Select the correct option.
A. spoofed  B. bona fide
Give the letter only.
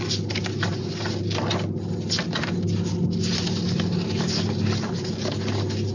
B